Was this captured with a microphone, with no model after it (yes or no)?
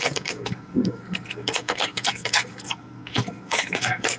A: no